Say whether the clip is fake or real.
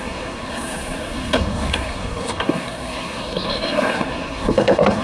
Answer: fake